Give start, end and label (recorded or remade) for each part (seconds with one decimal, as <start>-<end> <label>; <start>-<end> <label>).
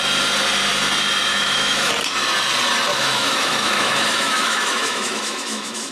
0.0-1.3 recorded; 1.3-1.9 remade; 1.9-2.9 recorded; 2.9-5.9 remade